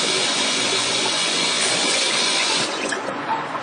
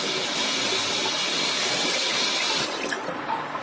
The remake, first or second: first